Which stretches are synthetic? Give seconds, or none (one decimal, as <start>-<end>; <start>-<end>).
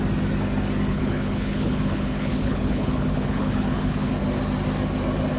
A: 0.9-4.1